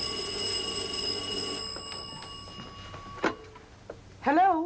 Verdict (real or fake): real